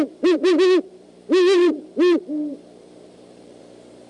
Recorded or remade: remade